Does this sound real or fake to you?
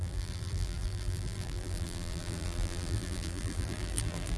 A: fake